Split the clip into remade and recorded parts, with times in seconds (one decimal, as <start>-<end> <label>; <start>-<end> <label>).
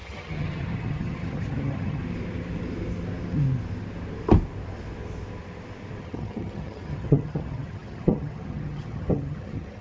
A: 0.0-2.0 remade; 2.0-6.0 recorded; 6.0-9.8 remade